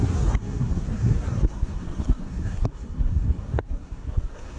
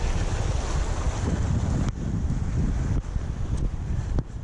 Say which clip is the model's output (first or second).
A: first